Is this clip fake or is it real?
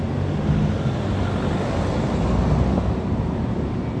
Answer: real